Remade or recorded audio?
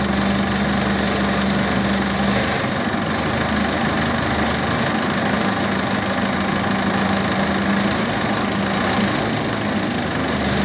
recorded